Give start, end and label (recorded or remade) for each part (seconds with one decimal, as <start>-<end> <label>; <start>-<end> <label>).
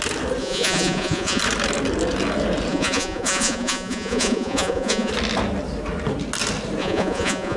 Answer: 0.0-0.4 recorded; 0.4-1.4 remade; 1.4-2.7 recorded; 2.7-5.1 remade; 5.1-6.8 recorded; 6.8-7.6 remade